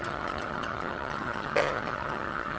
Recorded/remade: remade